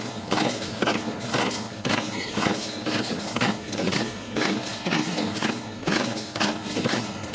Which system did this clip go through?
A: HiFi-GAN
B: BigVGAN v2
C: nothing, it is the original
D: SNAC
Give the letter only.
D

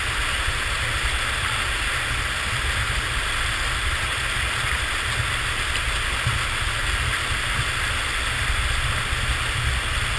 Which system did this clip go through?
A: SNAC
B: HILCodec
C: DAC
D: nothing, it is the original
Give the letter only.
D